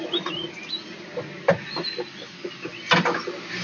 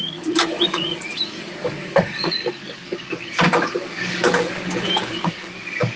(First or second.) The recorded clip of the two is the first